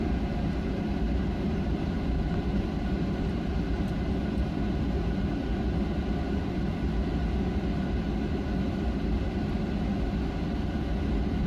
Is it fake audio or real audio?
real